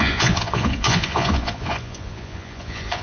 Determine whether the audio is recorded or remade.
remade